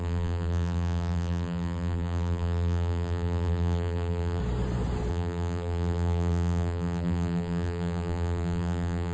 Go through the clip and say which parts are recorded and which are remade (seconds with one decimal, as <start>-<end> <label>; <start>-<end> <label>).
0.0-4.4 remade; 4.4-5.1 recorded; 5.1-9.1 remade

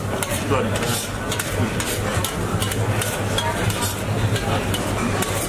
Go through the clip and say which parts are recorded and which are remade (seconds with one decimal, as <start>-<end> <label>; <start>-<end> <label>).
0.0-5.5 remade

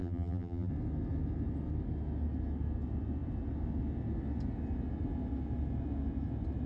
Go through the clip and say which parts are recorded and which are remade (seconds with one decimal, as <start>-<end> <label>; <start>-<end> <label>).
0.0-0.7 remade; 0.7-6.7 recorded

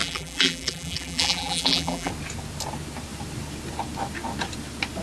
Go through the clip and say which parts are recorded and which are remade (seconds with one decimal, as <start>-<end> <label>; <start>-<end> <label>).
0.0-2.1 remade; 2.1-5.0 recorded

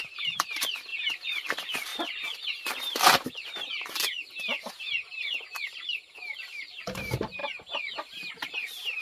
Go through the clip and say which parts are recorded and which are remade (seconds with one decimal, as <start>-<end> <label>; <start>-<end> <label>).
0.0-1.9 remade; 1.9-6.6 recorded; 6.6-7.4 remade; 7.4-8.3 recorded; 8.3-9.0 remade

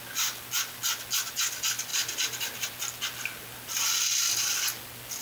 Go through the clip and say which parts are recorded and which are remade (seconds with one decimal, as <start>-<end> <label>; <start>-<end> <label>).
0.0-1.9 recorded; 1.9-2.6 remade; 2.6-5.2 recorded